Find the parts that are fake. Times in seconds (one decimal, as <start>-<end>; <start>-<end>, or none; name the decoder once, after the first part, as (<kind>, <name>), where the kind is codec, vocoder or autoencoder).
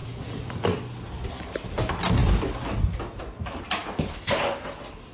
0.0-1.3 (vocoder, BigVGAN v2); 2.2-3.2; 3.8-5.1